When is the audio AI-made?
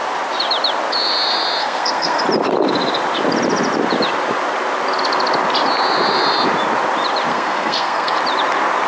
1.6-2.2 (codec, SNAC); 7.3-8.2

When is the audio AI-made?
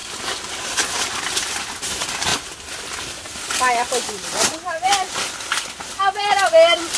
1.5-2.3 (vocoder, BigVGAN v2); 6.2-7.0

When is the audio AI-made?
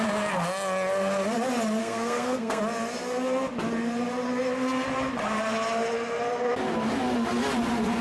1.8-2.6 (codec, SNAC)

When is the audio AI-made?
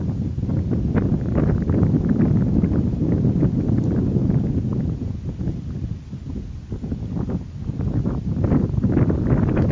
none